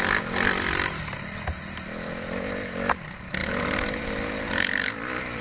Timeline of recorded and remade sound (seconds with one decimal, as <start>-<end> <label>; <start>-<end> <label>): 0.0-5.4 recorded